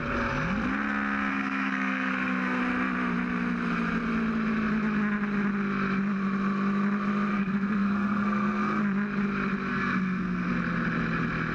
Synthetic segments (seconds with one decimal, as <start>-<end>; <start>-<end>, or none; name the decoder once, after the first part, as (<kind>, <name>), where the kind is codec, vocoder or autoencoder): 1.3-2.6 (codec, SNAC); 7.3-8.8; 9.7-10.5